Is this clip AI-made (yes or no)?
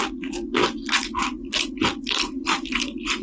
no